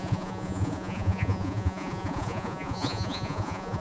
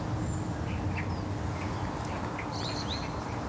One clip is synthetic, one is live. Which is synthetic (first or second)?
first